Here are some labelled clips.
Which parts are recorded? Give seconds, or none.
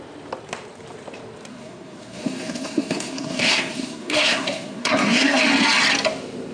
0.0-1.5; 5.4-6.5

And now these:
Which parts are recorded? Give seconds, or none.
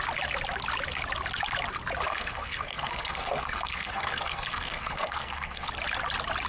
0.0-2.1; 5.7-6.5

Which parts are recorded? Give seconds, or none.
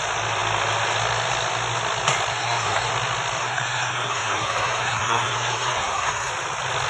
0.0-2.3; 2.9-3.4; 6.3-6.9